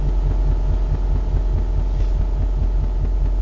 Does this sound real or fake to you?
real